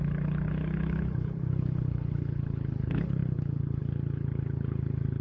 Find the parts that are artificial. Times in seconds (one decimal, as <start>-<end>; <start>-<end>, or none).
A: 0.0-5.2